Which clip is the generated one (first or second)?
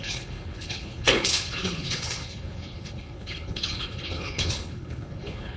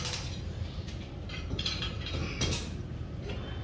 first